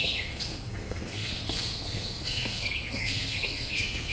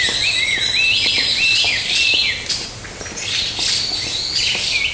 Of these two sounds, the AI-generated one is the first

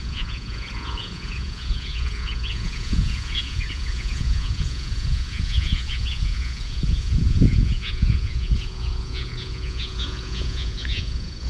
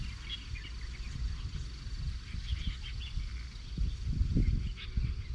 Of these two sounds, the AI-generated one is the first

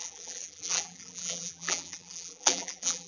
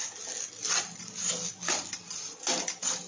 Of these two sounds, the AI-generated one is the first